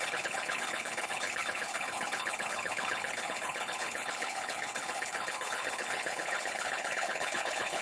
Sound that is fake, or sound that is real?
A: fake